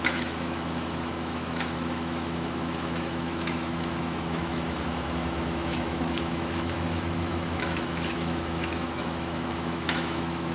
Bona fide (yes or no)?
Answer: no